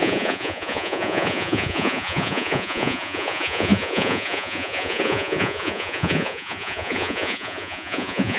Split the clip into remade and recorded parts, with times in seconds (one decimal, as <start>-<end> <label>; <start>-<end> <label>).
0.0-8.4 remade